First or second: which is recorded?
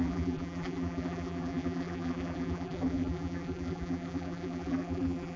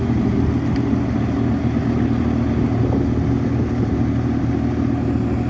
second